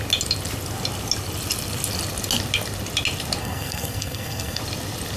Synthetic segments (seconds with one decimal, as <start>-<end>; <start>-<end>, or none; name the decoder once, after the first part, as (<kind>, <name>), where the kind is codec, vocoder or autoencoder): 3.4-4.6 (codec, SNAC)